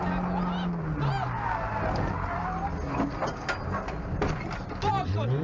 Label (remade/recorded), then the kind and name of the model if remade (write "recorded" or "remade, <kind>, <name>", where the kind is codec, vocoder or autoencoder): recorded